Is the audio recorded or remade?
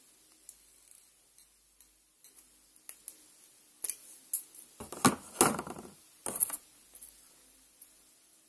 recorded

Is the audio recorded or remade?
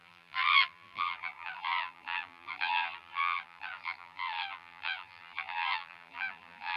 remade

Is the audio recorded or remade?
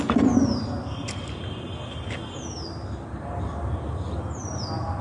recorded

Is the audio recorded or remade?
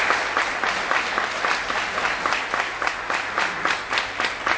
recorded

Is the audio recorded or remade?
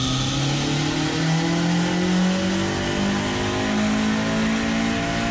recorded